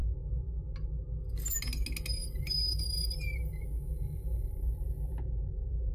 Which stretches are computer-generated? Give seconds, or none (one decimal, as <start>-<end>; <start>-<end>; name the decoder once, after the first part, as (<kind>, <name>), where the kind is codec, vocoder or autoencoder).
0.0-0.6 (vocoder, BigVGAN v2); 2.2-5.9